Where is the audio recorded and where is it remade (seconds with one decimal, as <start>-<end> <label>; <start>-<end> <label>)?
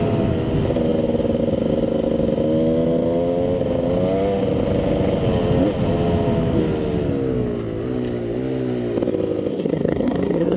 0.0-9.5 recorded; 9.5-10.6 remade